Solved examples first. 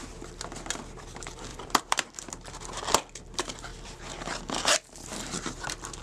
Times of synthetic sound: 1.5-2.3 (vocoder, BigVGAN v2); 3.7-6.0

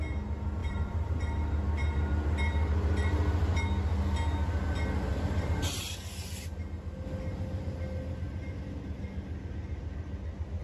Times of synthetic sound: 0.6-1.2 (vocoder, BigVGAN v2); 5.1-5.8

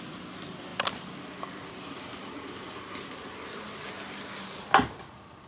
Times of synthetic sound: none

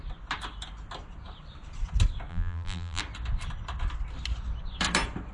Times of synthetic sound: 2.3-3.0 (vocoder, BigVGAN v2)

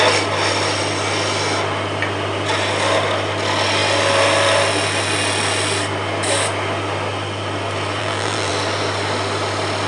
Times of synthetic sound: 8.0-8.5 (vocoder, BigVGAN v2)